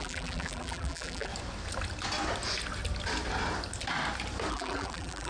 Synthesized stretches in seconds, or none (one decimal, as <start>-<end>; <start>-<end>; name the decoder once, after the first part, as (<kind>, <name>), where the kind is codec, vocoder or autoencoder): 0.0-1.3 (vocoder, BigVGAN v2); 4.5-5.3